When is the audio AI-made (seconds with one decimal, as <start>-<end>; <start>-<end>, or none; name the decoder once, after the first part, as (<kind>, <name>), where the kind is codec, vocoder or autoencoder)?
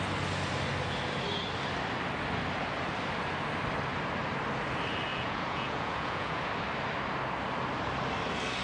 5.1-6.5 (vocoder, Vocos)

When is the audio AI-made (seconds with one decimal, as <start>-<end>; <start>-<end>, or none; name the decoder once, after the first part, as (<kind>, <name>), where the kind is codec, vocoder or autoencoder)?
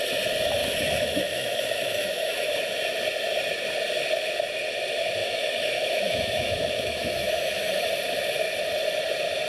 0.6-2.5 (autoencoder, DAC-VAE); 5.2-7.9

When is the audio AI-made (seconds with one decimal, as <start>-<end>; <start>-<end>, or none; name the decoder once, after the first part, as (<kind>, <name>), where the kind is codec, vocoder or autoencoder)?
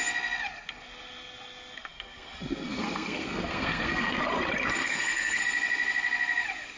1.9-4.2 (codec, SNAC); 4.8-5.4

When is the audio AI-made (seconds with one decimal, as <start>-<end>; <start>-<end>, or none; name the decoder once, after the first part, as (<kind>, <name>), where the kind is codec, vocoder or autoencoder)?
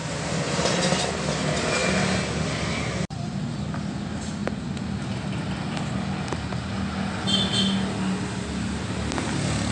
none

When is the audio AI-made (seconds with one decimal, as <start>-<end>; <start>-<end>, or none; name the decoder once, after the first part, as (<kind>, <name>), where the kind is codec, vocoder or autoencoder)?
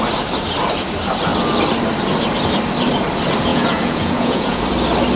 3.5-4.6 (vocoder, Vocos)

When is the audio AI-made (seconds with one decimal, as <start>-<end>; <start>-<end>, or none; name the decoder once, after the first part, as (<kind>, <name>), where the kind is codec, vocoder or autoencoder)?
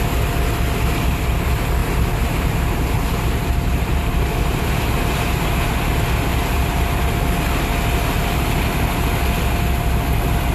1.8-5.7 (vocoder, BigVGAN v2); 6.3-7.0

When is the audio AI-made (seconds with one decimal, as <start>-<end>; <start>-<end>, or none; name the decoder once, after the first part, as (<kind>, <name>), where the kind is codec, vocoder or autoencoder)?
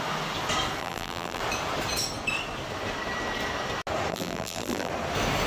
0.8-1.4 (vocoder, BigVGAN v2); 4.1-4.9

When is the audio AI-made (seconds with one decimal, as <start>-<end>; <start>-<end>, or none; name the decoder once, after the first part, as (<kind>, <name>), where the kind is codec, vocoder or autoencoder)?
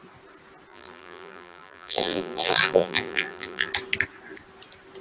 0.7-3.7 (vocoder, BigVGAN v2)